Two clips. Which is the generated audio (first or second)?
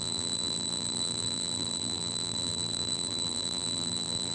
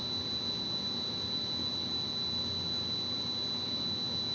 first